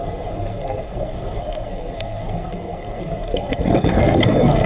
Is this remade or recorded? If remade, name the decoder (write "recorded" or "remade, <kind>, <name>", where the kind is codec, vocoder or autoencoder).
remade, codec, SNAC